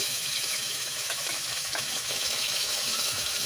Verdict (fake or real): fake